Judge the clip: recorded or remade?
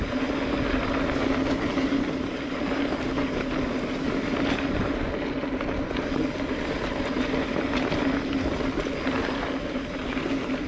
recorded